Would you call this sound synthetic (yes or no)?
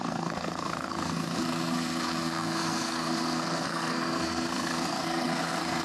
yes